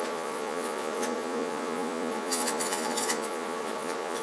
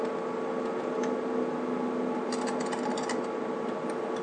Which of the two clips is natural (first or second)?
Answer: second